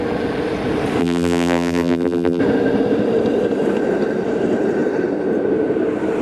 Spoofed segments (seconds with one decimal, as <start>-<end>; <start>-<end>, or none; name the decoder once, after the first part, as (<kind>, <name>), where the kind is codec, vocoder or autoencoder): 1.0-2.4 (vocoder, BigVGAN v2)